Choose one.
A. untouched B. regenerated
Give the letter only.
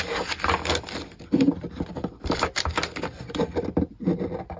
A